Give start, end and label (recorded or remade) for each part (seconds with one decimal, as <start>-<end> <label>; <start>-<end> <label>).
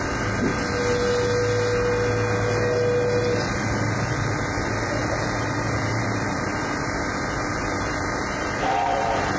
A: 0.0-0.5 remade; 0.5-3.4 recorded; 3.4-9.4 remade